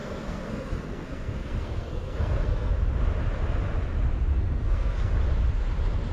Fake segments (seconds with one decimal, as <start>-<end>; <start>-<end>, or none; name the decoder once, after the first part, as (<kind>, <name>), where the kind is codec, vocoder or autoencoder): 0.0-2.7 (codec, SNAC); 4.3-5.1